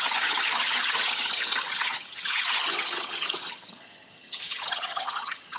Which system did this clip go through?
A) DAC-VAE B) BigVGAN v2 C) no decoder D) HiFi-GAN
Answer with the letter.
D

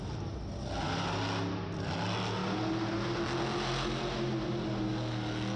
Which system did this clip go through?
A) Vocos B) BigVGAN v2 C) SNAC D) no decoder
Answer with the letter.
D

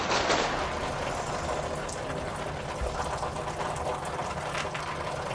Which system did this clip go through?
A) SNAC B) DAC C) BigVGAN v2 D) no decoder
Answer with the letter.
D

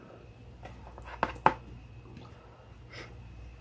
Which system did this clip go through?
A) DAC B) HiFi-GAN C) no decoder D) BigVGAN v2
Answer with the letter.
C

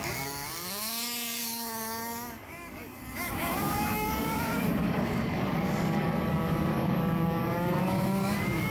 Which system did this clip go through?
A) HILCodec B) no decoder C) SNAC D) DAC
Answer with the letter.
D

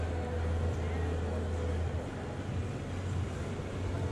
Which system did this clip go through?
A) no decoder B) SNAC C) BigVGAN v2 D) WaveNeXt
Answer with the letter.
A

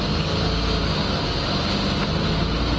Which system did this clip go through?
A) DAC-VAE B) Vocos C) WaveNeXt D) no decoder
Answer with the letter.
D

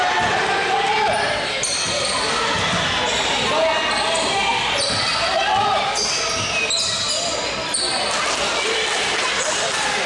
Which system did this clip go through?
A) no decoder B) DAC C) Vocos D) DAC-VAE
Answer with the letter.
A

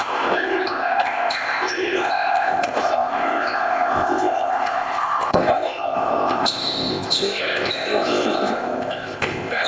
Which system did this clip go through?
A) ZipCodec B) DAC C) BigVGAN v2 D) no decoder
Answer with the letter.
A